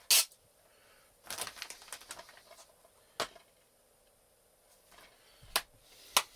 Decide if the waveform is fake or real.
real